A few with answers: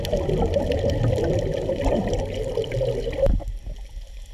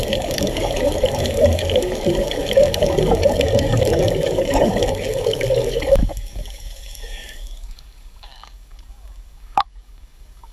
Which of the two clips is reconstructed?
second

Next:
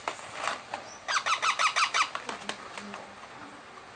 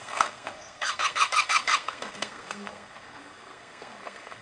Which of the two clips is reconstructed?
second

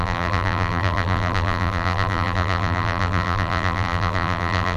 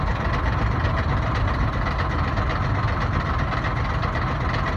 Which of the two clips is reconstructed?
first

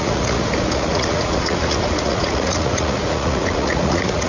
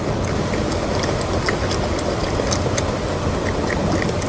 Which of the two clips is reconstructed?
first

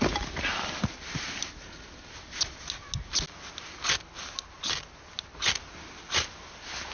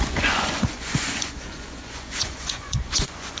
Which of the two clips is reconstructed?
second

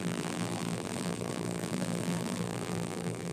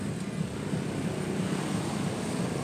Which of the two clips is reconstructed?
first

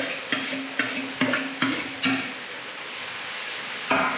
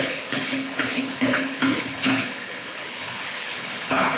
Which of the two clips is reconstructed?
second